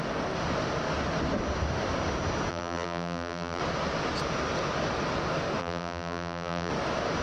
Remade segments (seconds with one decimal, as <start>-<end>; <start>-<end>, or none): 2.5-3.6; 5.6-6.7